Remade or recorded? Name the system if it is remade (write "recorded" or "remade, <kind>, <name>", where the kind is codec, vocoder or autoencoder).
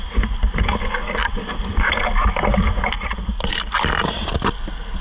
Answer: recorded